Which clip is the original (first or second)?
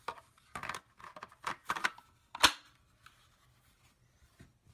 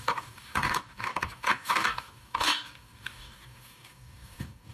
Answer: first